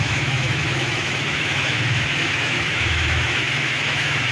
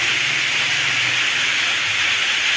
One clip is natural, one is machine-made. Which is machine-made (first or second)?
first